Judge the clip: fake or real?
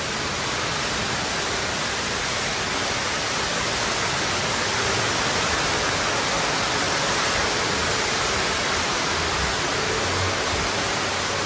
real